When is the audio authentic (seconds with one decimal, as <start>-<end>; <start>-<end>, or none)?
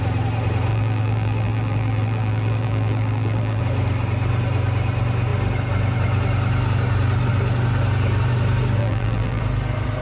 0.0-0.7; 3.6-8.8; 9.4-10.0